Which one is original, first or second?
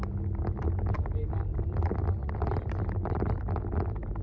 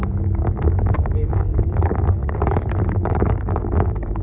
first